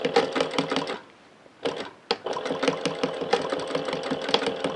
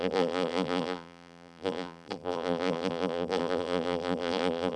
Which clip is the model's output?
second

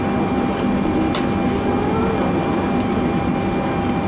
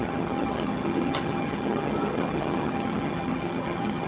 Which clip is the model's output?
second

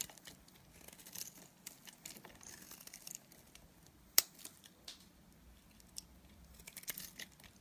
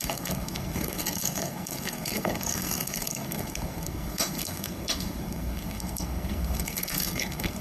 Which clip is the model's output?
second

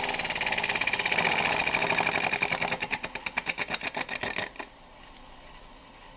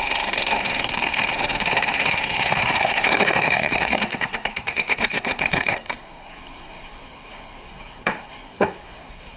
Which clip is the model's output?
second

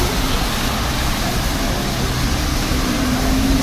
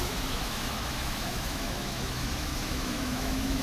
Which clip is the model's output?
second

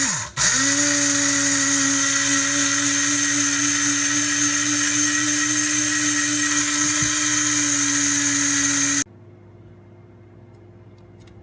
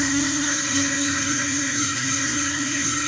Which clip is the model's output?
second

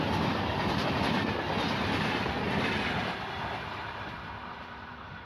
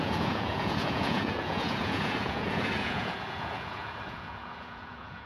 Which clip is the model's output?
second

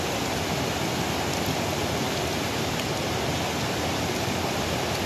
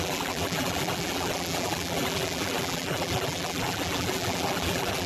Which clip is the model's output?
second